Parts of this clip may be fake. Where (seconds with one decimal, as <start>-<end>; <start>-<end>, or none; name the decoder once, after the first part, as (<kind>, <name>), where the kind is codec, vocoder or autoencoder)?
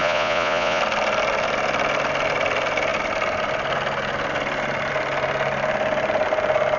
0.0-0.8 (vocoder, Vocos)